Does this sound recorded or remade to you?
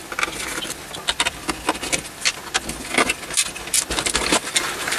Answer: recorded